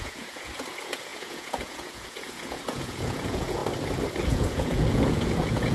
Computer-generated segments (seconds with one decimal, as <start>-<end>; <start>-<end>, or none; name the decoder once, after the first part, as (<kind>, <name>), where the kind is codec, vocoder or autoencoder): 0.0-3.6 (vocoder, Vocos); 4.2-5.7